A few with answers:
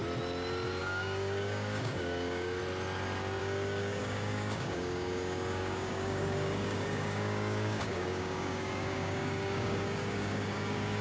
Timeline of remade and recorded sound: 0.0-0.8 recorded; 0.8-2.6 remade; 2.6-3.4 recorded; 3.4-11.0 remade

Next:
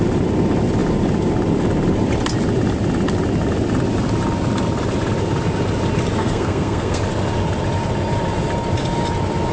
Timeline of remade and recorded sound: 0.0-6.2 recorded; 6.2-7.0 remade; 7.0-9.5 recorded

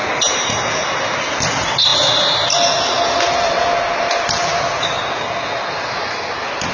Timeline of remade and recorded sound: 0.0-6.7 recorded

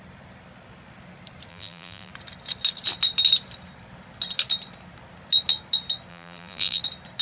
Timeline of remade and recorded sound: 0.0-1.5 recorded; 1.5-2.1 remade; 2.1-6.1 recorded; 6.1-6.8 remade; 6.8-7.2 recorded

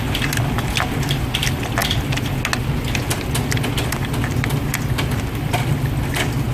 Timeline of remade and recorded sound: 0.0-6.5 recorded